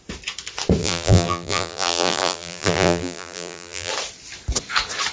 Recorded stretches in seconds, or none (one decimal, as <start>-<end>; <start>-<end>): 0.0-0.8; 3.9-5.1